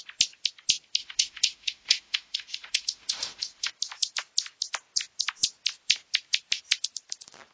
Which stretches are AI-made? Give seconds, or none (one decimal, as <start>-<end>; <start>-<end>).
1.0-3.7